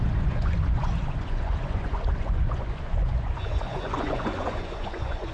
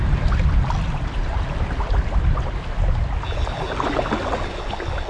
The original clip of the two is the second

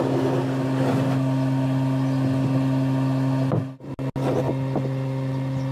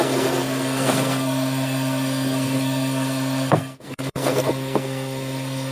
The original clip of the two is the first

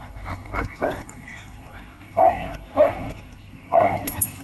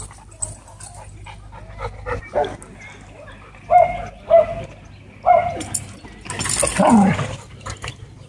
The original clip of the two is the second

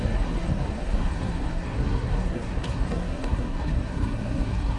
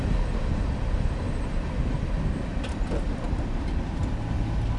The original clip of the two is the second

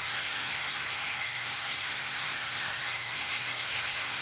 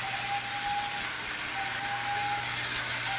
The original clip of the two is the second